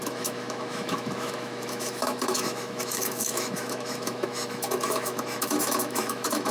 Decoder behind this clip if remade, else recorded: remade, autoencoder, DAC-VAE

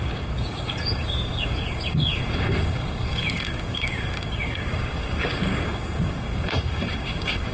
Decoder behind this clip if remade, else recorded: remade, codec, DAC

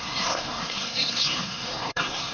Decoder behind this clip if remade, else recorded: remade, codec, SNAC